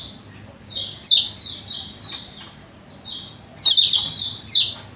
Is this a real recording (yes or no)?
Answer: yes